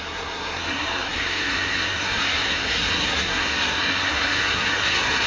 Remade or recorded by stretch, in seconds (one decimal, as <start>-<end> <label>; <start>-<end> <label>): 0.0-5.3 remade